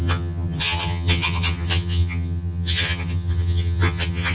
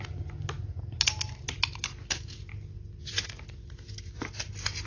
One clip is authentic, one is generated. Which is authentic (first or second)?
second